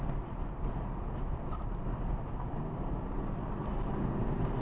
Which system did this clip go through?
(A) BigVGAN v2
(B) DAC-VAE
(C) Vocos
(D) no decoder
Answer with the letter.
D